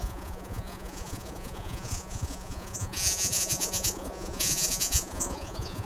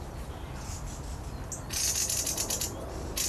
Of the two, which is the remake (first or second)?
first